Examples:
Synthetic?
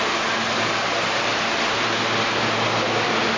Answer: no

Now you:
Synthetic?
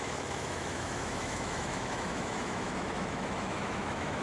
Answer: yes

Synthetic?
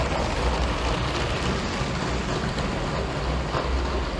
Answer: no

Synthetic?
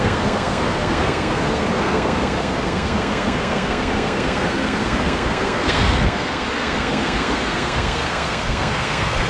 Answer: yes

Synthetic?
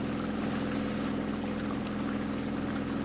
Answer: no